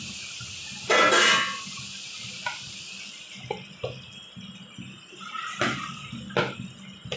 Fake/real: real